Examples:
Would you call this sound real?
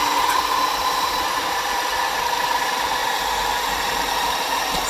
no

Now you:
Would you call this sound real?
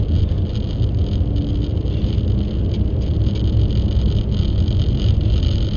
yes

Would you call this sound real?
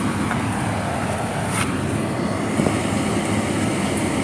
yes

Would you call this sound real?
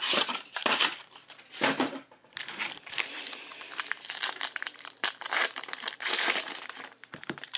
no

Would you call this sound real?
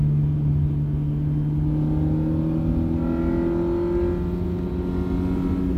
yes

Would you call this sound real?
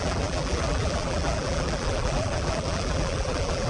no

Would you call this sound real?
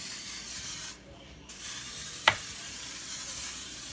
no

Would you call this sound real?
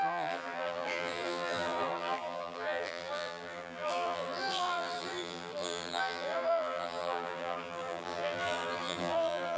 no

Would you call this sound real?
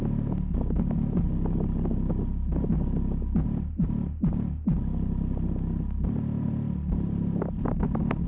yes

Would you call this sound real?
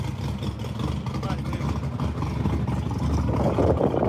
yes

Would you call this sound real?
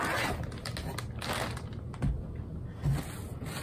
yes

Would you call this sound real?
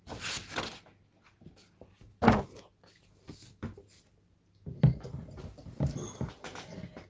yes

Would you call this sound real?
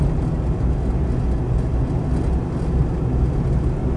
yes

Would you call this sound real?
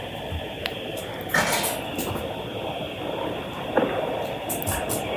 yes